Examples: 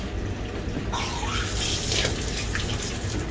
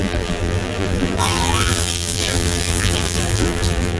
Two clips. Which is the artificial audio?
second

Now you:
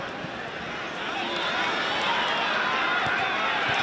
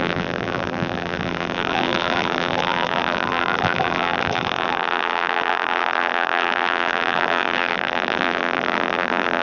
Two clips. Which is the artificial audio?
second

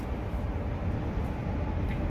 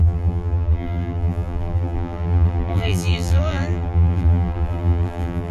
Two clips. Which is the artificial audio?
second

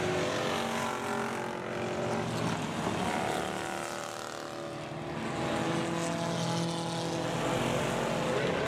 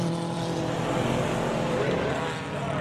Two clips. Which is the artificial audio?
second